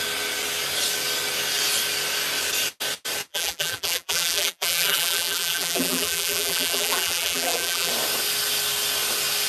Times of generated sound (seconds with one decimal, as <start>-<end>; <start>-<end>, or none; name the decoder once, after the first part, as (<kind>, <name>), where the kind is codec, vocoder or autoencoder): 3.3-7.9 (vocoder, BigVGAN v2)